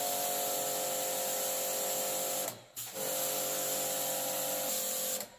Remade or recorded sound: recorded